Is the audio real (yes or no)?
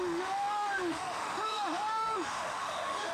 no